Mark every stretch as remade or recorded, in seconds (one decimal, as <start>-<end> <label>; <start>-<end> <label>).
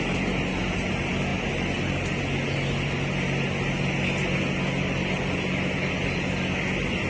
0.0-7.1 recorded